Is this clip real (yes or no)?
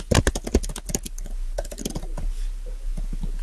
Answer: yes